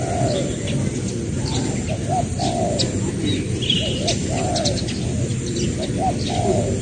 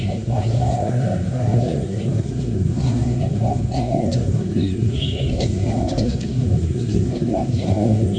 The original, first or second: first